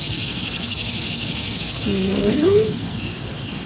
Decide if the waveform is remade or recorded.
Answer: remade